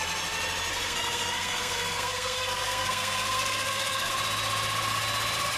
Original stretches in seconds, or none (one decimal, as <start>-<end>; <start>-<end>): 0.0-0.7; 4.1-5.6